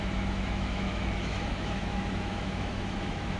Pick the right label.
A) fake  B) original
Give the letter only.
A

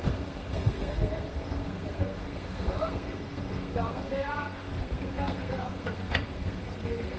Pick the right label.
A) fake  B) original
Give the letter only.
A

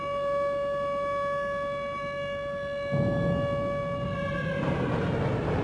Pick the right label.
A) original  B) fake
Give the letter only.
A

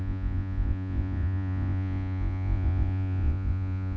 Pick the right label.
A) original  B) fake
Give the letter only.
B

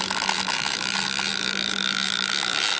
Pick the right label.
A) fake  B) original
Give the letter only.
B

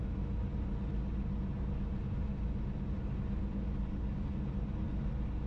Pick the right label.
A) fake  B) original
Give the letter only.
B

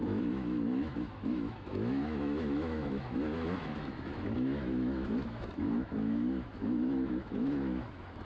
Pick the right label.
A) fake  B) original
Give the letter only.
A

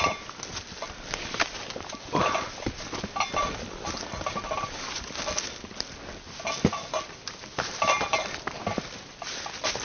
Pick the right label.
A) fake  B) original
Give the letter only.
B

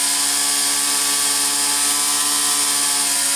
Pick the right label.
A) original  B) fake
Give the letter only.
A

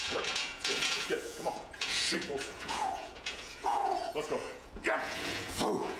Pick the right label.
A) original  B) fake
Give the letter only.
B